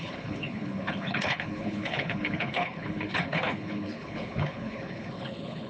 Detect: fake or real fake